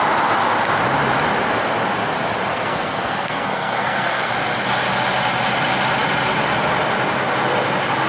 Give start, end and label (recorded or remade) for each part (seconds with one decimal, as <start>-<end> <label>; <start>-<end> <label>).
0.0-2.5 recorded; 2.5-4.3 remade; 4.3-8.1 recorded